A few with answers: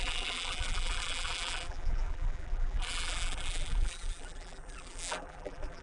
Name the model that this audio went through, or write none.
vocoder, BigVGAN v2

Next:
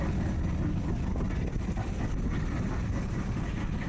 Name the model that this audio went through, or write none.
none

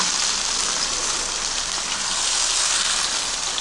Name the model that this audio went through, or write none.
none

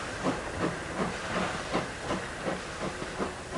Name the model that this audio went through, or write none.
none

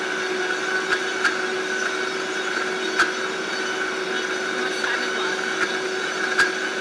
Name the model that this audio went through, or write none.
none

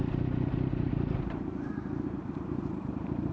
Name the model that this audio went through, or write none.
vocoder, BigVGAN v2